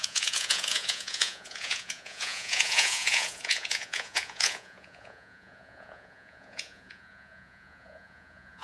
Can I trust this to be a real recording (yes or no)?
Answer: no